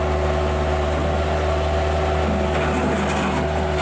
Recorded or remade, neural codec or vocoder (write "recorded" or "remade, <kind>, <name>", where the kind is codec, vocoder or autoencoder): recorded